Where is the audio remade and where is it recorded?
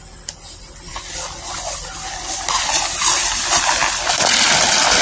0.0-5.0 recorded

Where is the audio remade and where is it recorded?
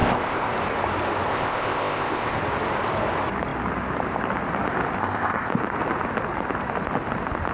0.0-0.5 remade; 0.5-1.3 recorded; 1.3-2.4 remade; 2.4-5.0 recorded; 5.0-5.5 remade; 5.5-7.5 recorded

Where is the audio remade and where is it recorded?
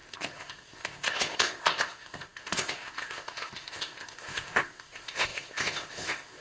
0.0-6.4 remade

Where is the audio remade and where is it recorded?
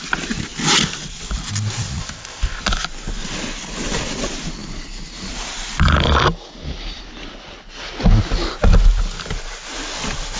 0.0-2.0 recorded; 2.0-2.6 remade; 2.6-10.4 recorded